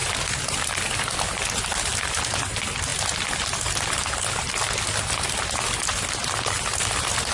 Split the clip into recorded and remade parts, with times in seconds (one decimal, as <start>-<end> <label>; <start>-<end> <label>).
0.0-7.3 recorded